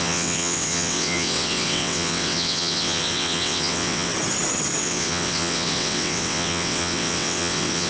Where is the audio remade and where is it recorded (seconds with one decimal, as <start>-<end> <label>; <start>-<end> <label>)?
0.0-4.1 remade; 4.1-4.8 recorded; 4.8-7.9 remade